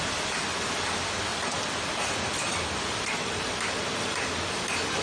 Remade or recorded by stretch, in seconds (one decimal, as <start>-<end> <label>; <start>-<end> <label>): 0.0-1.3 recorded; 1.3-4.3 remade; 4.3-5.0 recorded